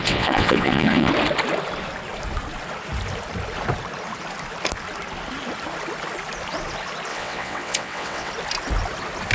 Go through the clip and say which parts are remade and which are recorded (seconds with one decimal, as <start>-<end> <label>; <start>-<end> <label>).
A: 0.0-1.1 remade; 1.1-7.1 recorded; 7.1-8.3 remade; 8.3-9.3 recorded